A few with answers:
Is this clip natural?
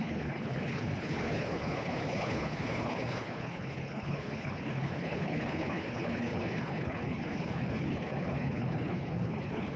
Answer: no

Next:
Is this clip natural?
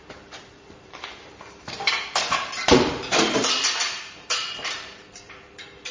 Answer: no